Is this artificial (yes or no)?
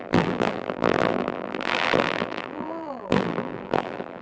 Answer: yes